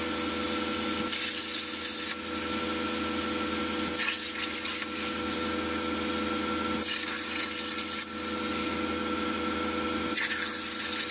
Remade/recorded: recorded